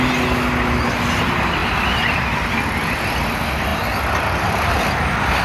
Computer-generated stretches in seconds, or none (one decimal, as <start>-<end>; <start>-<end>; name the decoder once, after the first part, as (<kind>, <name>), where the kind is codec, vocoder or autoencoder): none